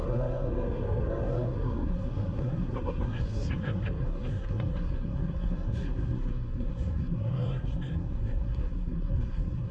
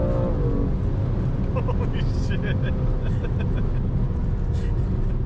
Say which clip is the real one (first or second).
second